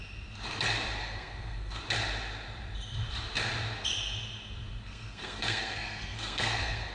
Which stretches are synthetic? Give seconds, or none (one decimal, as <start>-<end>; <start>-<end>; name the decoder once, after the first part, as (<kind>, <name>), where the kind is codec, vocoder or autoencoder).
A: 1.0-1.8 (codec, SNAC); 4.9-6.9